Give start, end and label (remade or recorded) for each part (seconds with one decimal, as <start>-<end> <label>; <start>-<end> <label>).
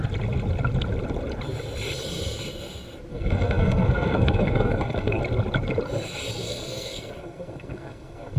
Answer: 0.0-3.1 recorded; 3.1-5.2 remade; 5.2-6.4 recorded; 6.4-8.4 remade